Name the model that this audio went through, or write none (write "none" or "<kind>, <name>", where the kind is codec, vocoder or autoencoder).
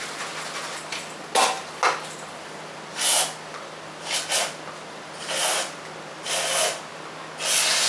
none